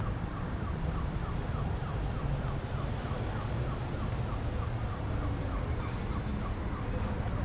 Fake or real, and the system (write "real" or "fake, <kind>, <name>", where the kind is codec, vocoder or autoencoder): real